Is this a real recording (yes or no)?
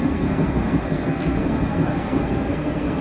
no